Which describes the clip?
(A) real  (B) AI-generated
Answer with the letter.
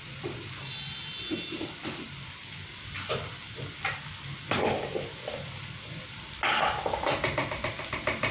A